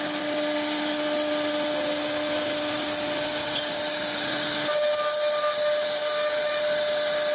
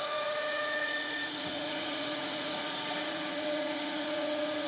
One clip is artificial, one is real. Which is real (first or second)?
first